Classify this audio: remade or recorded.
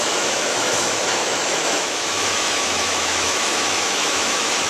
remade